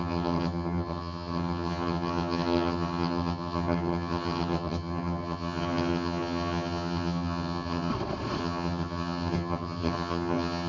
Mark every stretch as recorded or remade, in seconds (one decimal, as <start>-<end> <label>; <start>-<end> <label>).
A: 0.0-7.9 remade; 7.9-8.4 recorded; 8.4-10.7 remade